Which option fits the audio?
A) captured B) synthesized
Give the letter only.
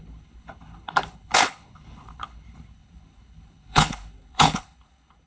B